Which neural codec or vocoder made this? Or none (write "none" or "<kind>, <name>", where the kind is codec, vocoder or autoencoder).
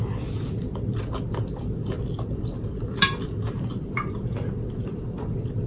none